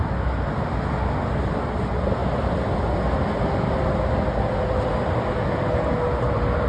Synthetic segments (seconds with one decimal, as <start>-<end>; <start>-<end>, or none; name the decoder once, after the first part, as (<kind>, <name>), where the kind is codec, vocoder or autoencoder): none